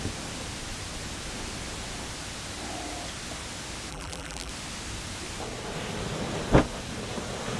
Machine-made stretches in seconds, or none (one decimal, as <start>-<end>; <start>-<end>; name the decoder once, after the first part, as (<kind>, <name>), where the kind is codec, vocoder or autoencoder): 3.9-4.5 (vocoder, BigVGAN v2)